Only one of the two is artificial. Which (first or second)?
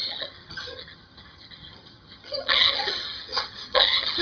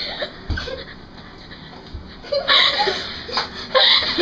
first